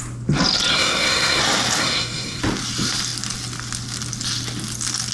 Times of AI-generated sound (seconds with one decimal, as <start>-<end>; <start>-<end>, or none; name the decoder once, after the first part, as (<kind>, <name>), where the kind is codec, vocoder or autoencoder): 0.7-1.4 (codec, SNAC); 1.8-2.4